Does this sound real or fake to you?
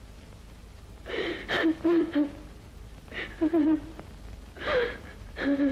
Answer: fake